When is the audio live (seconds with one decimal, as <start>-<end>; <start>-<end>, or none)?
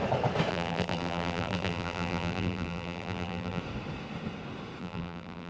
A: 0.0-0.5; 3.6-4.8